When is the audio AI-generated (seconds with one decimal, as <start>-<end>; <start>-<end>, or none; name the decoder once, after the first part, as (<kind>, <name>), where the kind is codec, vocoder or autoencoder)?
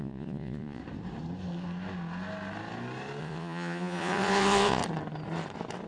0.0-0.8 (vocoder, Vocos); 3.2-4.8